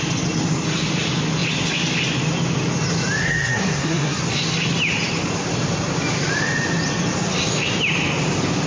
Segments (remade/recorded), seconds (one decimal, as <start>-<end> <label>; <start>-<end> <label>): 0.0-3.2 recorded; 3.2-4.2 remade; 4.2-8.7 recorded